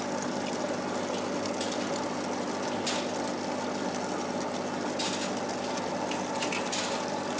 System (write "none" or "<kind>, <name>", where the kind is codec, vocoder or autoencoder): none